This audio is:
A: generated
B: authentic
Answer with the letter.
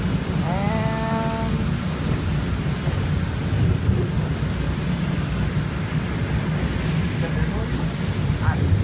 B